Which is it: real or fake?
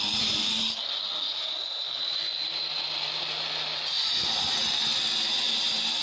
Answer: real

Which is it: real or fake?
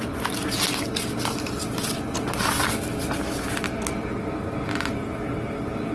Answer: real